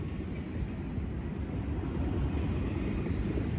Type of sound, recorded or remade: recorded